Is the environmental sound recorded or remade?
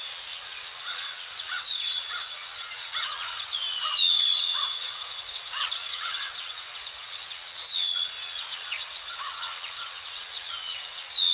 remade